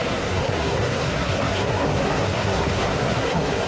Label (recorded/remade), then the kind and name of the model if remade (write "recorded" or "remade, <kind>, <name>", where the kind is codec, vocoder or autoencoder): remade, codec, SNAC